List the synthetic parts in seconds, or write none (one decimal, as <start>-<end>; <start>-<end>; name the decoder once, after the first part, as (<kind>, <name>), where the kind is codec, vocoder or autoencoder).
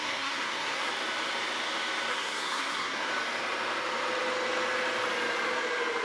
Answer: 0.0-0.9 (codec, SNAC); 2.1-3.1